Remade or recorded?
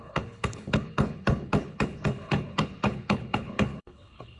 remade